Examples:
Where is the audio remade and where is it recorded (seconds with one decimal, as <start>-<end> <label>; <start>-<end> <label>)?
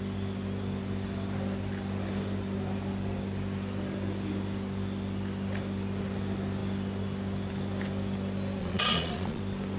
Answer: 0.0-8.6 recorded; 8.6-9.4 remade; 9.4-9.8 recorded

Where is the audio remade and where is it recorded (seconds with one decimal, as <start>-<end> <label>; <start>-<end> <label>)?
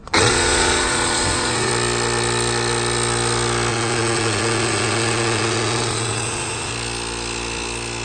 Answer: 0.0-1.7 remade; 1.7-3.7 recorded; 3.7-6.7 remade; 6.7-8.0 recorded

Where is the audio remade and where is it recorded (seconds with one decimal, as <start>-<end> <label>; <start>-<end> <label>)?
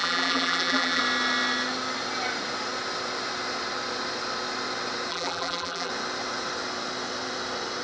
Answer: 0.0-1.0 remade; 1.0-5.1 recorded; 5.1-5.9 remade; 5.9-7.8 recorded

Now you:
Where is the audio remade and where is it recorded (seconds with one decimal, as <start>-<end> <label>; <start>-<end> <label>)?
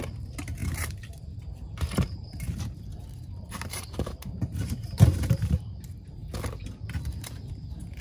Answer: 0.0-6.2 remade; 6.2-7.5 recorded; 7.5-8.0 remade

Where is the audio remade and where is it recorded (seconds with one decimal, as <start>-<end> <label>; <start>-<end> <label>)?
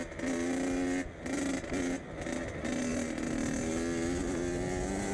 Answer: 0.0-5.1 recorded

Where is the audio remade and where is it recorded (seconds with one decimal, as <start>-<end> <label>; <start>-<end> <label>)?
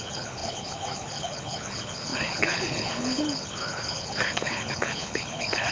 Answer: 0.0-5.7 remade